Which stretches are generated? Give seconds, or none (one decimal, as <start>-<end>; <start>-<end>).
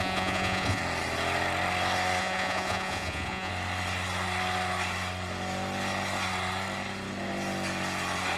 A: 0.0-0.8; 2.2-3.5